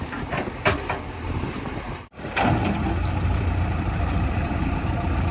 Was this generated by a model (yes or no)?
yes